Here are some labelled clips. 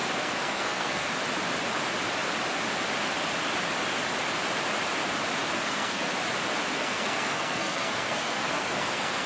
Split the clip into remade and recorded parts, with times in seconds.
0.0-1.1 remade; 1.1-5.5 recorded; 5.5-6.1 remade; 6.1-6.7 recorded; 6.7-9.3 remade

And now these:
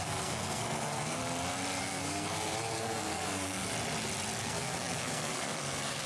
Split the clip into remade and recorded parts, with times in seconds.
0.0-1.2 remade; 1.2-1.8 recorded; 1.8-3.6 remade; 3.6-4.4 recorded; 4.4-6.1 remade

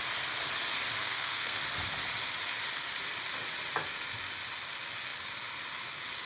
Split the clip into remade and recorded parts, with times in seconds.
0.0-1.0 recorded; 1.0-1.6 remade; 1.6-6.3 recorded

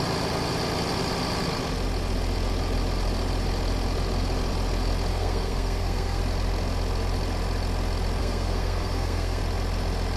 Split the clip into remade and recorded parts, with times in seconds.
0.0-5.1 recorded; 5.1-6.2 remade; 6.2-8.2 recorded; 8.2-9.4 remade; 9.4-10.2 recorded

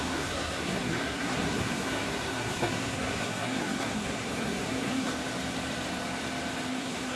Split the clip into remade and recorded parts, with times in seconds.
0.0-5.1 remade; 5.1-6.7 recorded; 6.7-7.2 remade

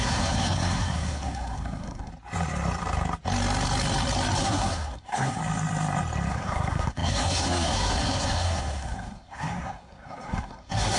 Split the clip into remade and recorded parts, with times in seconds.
0.0-2.1 remade; 2.1-4.4 recorded; 4.4-5.4 remade; 5.4-6.3 recorded; 6.3-11.0 remade

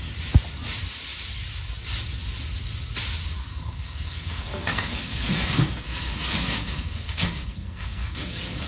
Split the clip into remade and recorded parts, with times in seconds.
0.0-3.4 recorded; 3.4-8.7 remade